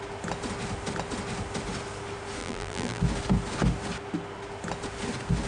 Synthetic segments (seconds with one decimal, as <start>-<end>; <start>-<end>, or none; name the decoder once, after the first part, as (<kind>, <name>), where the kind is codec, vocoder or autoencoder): 2.4-3.0 (vocoder, BigVGAN v2)